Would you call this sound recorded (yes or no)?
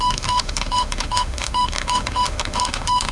no